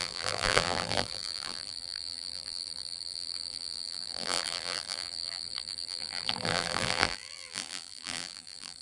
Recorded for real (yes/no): no